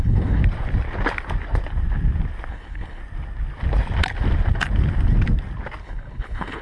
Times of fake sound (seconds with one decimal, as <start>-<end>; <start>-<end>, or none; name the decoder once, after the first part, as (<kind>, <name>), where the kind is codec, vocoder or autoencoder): 0.0-0.4 (codec, HILCodec); 2.5-3.0; 5.8-6.6